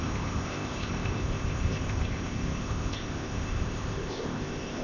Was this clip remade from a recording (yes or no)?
yes